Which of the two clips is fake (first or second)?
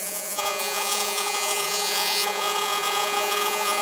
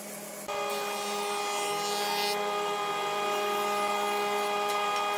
first